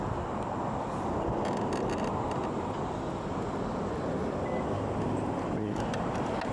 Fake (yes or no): no